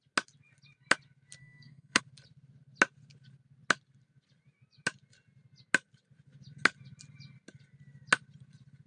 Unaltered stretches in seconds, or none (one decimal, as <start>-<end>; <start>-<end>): 0.0-1.4; 2.0-8.9